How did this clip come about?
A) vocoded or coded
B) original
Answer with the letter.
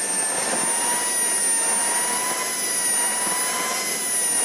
B